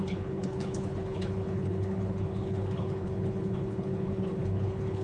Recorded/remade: remade